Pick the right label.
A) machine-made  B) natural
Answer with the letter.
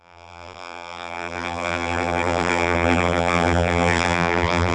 A